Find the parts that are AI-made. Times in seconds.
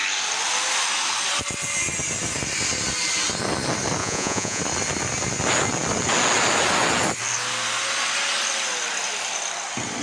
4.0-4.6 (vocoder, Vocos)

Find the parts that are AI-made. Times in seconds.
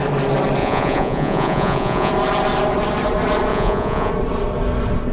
0.6-2.1 (vocoder, Vocos); 3.5-4.1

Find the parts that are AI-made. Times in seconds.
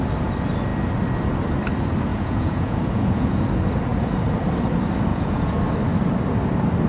2.1-3.4 (vocoder, Vocos); 5.1-5.6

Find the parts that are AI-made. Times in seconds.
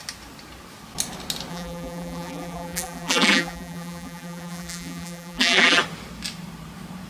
1.5-5.8 (vocoder, BigVGAN v2)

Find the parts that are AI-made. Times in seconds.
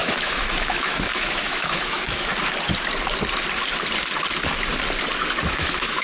0.0-2.3 (autoencoder, DAC-VAE); 5.5-6.0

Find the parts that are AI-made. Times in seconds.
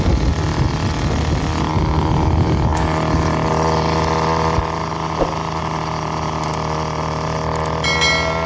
none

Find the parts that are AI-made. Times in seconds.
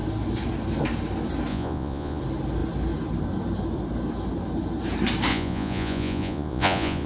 1.5-2.2 (vocoder, Vocos); 5.3-7.1